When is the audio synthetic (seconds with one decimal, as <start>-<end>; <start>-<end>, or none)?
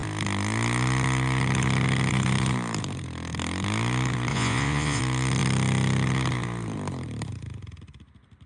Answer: 4.3-5.0